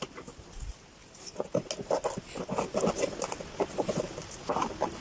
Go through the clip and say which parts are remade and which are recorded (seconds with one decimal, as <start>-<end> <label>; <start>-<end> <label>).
0.0-5.0 recorded